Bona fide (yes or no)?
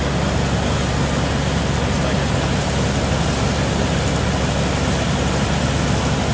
yes